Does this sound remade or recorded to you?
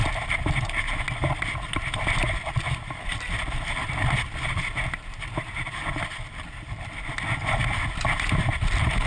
recorded